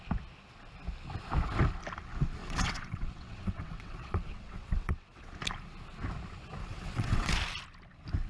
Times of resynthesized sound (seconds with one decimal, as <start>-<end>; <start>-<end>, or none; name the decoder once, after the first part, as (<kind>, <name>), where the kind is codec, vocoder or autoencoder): 2.4-5.3 (vocoder, WaveNeXt); 6.6-7.3